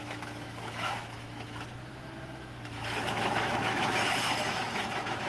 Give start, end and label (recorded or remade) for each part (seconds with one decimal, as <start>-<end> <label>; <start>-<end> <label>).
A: 0.0-5.3 remade